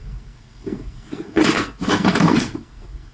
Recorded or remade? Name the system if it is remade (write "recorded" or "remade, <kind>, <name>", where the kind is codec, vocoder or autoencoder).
remade, codec, SNAC